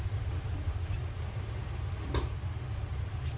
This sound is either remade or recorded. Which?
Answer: recorded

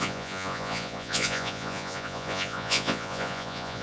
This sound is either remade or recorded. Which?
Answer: remade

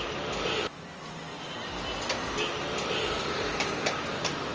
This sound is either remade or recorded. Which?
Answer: recorded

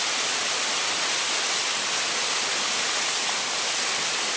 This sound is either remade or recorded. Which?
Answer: recorded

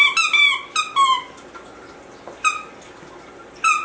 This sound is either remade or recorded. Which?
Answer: recorded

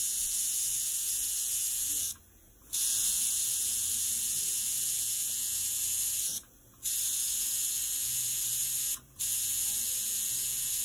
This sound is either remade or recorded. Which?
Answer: remade